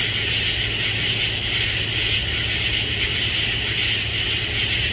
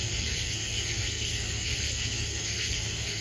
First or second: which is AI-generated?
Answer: second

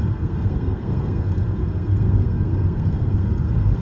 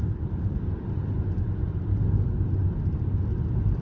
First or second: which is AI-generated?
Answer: first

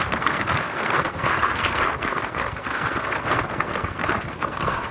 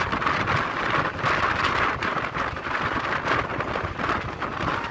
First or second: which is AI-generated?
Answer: first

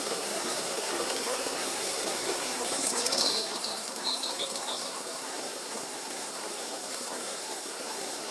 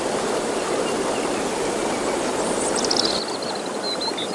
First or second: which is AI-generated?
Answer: first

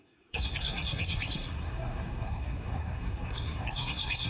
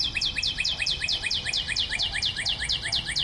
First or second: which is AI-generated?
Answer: first